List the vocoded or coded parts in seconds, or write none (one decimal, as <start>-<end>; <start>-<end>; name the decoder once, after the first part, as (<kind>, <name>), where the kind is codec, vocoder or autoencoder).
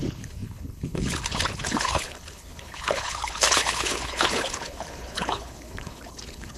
0.0-6.6 (codec, HILCodec)